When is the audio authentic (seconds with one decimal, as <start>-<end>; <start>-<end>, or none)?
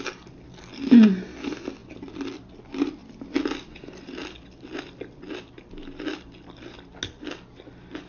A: 0.0-8.1